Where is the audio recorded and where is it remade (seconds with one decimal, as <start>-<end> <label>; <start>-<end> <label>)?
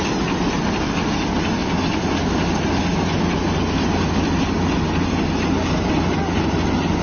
0.0-7.0 recorded